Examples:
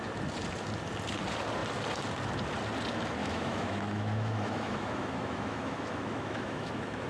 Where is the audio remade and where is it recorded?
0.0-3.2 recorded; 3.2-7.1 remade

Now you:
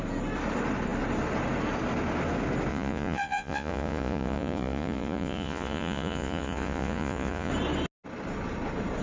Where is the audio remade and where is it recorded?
0.0-2.7 recorded; 2.7-7.5 remade; 7.5-9.0 recorded

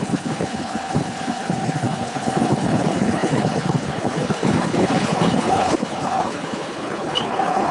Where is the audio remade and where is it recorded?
0.0-7.7 remade